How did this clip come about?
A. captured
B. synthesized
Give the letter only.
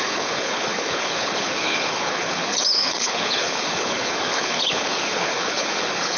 B